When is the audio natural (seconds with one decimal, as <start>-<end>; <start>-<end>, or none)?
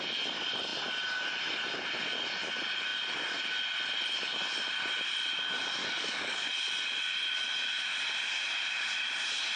0.0-5.8; 6.5-9.6